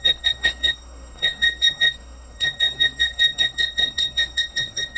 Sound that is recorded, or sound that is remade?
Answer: remade